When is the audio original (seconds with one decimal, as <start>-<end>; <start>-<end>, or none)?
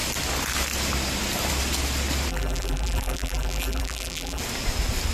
0.0-2.3; 4.4-5.1